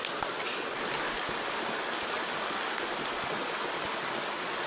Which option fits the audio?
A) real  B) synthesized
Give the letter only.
A